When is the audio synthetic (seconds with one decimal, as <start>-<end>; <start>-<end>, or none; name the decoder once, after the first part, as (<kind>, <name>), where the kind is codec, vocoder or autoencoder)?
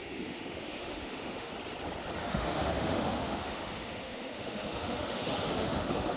0.0-1.5 (autoencoder, DAC-VAE); 2.2-6.2